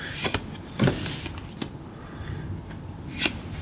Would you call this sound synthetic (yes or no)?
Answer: no